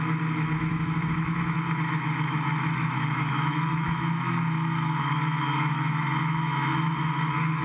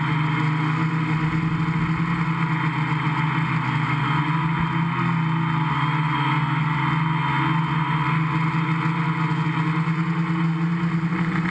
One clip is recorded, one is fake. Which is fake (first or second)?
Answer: first